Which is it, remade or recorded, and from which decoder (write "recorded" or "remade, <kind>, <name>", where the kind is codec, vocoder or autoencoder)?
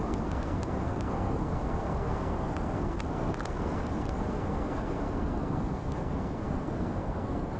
remade, codec, SNAC